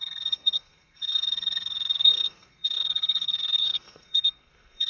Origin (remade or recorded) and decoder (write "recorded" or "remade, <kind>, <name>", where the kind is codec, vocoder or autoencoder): remade, codec, SNAC